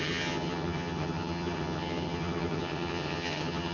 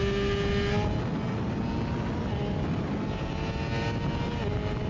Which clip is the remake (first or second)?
first